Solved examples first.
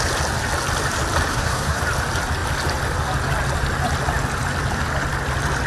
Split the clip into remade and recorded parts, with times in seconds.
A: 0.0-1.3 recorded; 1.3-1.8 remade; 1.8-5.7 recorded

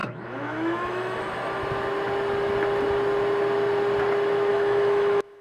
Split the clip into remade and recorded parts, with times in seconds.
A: 0.0-1.3 remade; 1.3-4.5 recorded; 4.5-5.4 remade

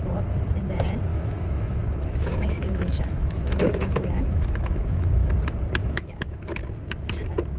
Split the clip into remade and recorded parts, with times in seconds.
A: 0.0-1.1 recorded; 1.1-5.3 remade; 5.3-5.8 recorded; 5.8-6.6 remade; 6.6-7.6 recorded

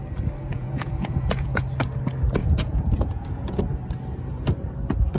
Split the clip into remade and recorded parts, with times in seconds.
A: 0.0-0.5 recorded; 0.5-1.6 remade; 1.6-2.4 recorded; 2.4-3.6 remade; 3.6-5.2 recorded